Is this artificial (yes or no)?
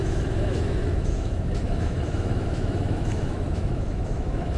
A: yes